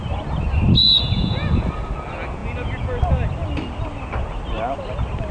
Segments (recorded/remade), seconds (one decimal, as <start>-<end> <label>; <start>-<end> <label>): 0.0-0.8 recorded; 0.8-1.6 remade; 1.6-5.3 recorded